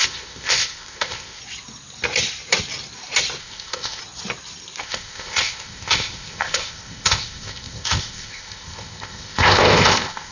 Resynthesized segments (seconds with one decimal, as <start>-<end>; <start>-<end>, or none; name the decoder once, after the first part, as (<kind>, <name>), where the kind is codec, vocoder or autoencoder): 0.0-1.4 (codec, ZipCodec); 3.4-4.0; 4.8-10.3